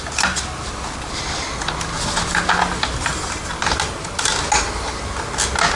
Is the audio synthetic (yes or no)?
no